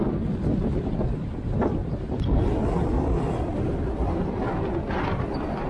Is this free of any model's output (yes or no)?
yes